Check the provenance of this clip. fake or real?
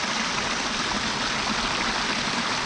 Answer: real